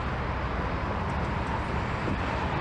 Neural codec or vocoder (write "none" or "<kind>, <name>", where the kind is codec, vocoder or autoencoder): none